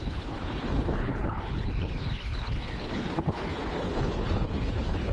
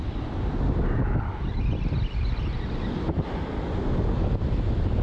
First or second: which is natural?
second